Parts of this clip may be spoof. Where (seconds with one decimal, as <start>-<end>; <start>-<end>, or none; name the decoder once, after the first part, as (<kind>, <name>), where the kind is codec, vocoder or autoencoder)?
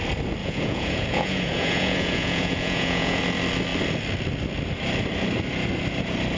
0.4-3.2 (vocoder, Vocos)